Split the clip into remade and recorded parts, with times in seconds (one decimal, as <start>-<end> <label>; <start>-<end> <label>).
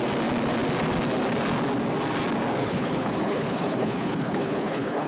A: 0.0-2.6 recorded; 2.6-5.1 remade